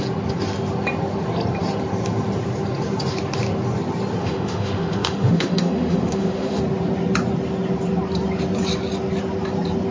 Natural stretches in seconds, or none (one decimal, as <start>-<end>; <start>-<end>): 0.0-4.2; 6.6-9.9